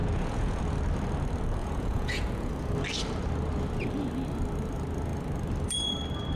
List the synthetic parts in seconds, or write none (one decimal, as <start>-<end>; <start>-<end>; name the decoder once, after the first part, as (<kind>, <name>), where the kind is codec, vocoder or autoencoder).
0.0-0.6 (vocoder, Vocos); 1.6-2.5